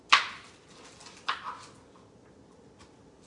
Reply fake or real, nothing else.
real